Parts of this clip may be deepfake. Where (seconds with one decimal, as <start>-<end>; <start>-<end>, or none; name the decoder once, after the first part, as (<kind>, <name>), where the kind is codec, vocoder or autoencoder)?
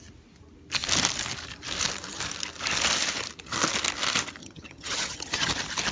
4.4-5.5 (vocoder, HiFi-GAN)